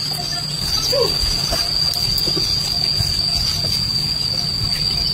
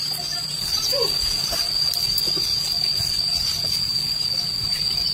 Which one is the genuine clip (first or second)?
first